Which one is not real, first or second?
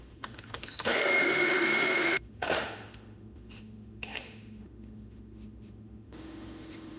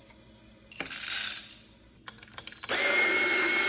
first